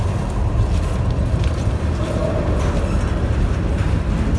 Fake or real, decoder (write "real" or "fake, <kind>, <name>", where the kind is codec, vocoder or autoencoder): real